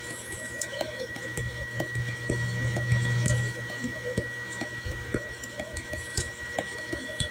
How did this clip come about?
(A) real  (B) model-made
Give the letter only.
B